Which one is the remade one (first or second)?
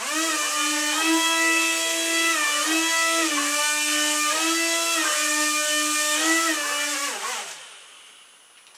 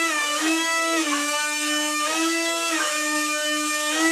second